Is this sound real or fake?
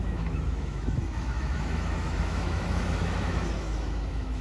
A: fake